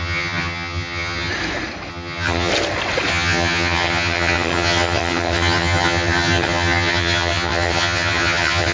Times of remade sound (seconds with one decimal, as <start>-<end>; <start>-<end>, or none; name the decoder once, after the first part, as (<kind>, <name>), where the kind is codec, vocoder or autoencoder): 0.0-1.3 (vocoder, HiFi-GAN); 1.9-2.5; 3.1-8.7